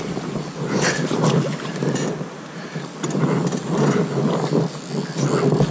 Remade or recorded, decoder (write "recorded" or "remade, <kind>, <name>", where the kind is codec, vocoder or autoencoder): recorded